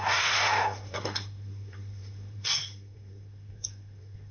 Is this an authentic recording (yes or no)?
no